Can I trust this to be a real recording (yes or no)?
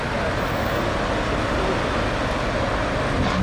yes